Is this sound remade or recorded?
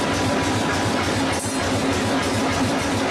recorded